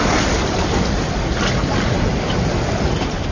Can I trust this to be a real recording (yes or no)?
yes